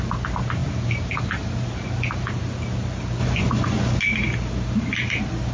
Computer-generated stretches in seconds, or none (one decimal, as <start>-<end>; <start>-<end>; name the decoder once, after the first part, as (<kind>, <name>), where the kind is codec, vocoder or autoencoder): 3.2-4.0 (vocoder, Vocos)